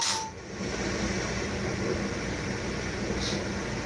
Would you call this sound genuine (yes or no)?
yes